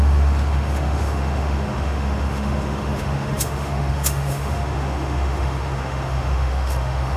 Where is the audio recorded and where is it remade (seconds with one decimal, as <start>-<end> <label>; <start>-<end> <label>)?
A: 0.0-7.2 remade